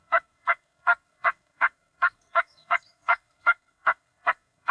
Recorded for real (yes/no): no